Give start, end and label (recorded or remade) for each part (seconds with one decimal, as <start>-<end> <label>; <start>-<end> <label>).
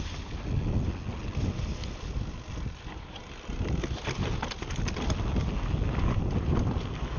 0.0-7.2 recorded